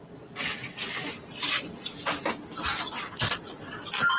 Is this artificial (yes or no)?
no